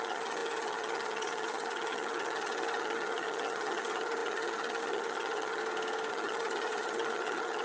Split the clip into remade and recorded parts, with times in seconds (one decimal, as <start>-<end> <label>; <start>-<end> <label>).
0.0-5.6 remade; 5.6-6.1 recorded; 6.1-7.6 remade